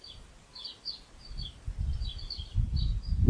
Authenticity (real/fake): real